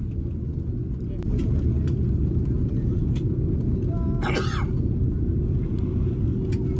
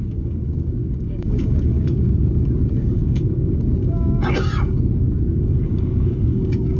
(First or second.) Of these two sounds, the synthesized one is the second